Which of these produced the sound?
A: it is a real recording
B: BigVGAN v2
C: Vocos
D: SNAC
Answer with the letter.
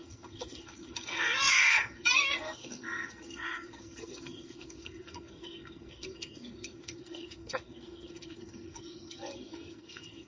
D